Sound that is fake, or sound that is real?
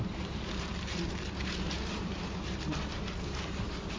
fake